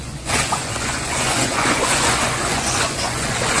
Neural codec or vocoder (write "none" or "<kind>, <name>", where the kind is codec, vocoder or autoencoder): vocoder, Vocos